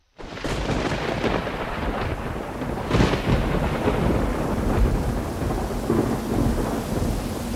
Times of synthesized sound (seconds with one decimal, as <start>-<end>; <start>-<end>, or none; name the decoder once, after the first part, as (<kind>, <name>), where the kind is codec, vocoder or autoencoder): 0.0-2.3 (vocoder, BigVGAN v2)